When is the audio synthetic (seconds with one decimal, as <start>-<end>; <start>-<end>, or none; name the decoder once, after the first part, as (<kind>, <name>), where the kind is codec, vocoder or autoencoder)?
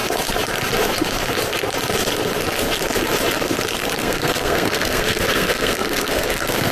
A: 4.0-6.7 (codec, SNAC)